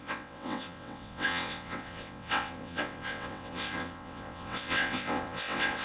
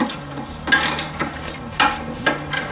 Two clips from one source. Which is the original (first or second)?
second